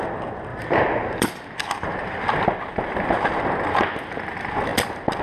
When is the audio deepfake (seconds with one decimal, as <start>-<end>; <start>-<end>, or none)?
0.5-3.4